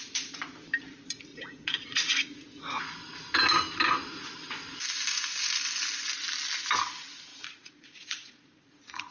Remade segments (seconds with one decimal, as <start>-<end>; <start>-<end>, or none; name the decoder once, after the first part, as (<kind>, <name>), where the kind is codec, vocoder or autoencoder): 1.3-2.8 (vocoder, Vocos); 7.3-9.1